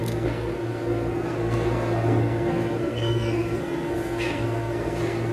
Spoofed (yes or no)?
yes